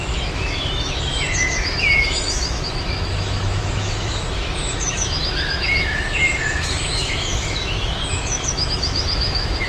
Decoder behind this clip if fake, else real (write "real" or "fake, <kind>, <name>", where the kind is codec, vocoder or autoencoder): fake, autoencoder, DAC-VAE